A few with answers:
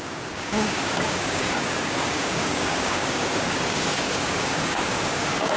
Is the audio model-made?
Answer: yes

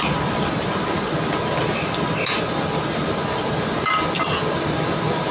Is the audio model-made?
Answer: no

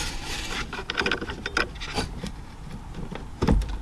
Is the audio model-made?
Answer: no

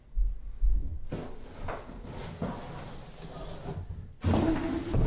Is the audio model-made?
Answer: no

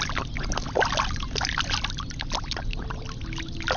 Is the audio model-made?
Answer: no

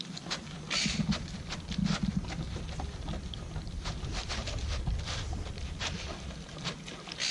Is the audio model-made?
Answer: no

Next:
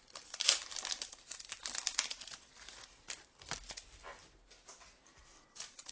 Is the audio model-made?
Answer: no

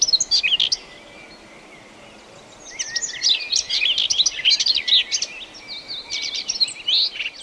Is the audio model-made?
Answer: no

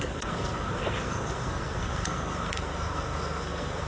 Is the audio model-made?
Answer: yes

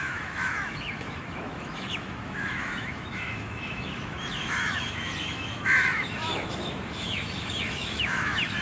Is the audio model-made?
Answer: yes